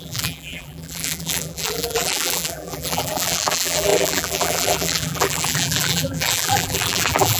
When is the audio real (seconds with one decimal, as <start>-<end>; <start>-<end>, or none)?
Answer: none